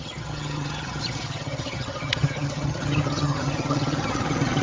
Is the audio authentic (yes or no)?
no